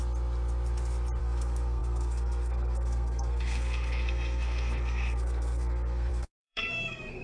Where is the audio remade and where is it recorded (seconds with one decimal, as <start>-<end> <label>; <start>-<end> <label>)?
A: 0.0-1.2 recorded; 1.2-7.2 remade